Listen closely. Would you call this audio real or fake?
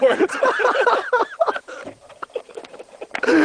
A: fake